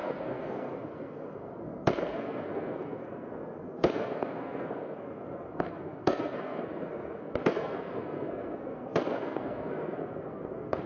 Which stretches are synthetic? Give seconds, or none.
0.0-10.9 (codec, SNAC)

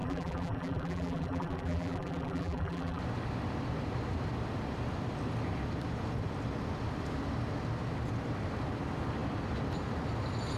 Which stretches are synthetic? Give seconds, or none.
0.0-3.0 (vocoder, BigVGAN v2)

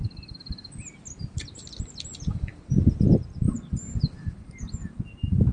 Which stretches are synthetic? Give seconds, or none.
none